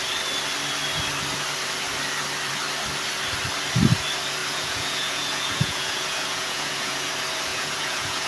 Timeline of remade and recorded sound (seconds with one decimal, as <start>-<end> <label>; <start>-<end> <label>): 0.0-4.4 recorded; 4.4-7.1 remade; 7.1-7.5 recorded; 7.5-8.3 remade